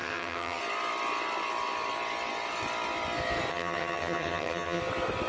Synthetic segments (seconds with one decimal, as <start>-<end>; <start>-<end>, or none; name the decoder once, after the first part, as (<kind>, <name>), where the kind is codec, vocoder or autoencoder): 0.0-0.6 (vocoder, HiFi-GAN); 3.5-4.8